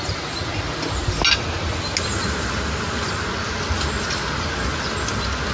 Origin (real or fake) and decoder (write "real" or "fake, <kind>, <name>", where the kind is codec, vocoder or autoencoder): real